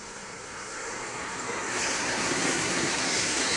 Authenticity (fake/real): fake